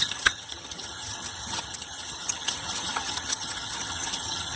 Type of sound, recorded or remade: remade